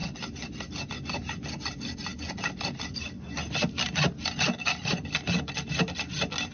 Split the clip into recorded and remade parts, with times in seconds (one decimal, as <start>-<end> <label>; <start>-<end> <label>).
0.0-6.5 recorded